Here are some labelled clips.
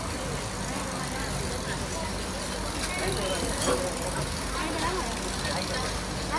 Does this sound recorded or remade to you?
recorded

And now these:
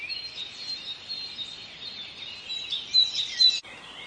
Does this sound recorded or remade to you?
recorded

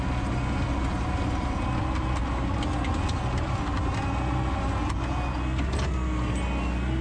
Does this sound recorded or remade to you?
recorded